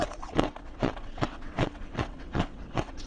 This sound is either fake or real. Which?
fake